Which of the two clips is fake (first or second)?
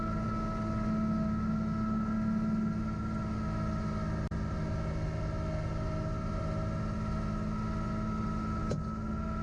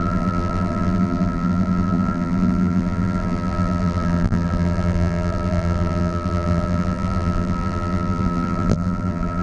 second